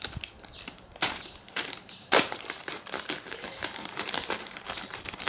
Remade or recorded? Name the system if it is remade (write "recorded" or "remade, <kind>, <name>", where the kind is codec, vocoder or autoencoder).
remade, vocoder, BigVGAN v2